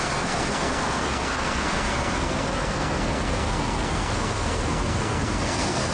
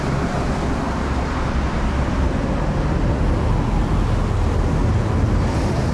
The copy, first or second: first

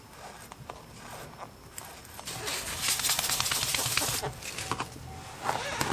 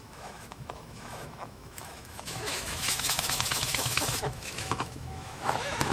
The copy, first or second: second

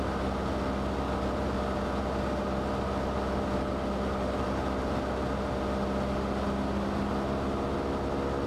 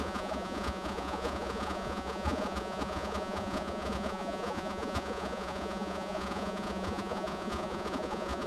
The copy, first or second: second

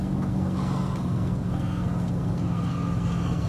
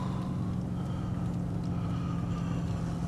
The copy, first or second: first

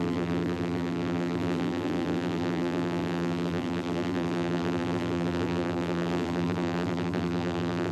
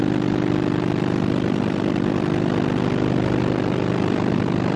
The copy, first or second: first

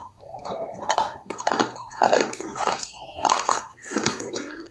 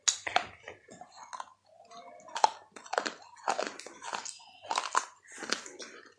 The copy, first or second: first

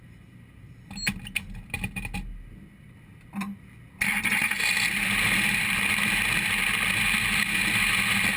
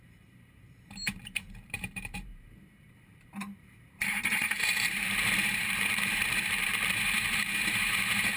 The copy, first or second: second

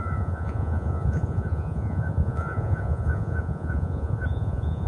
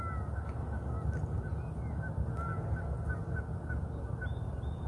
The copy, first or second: first